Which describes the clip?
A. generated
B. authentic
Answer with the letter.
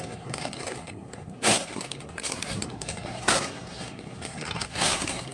A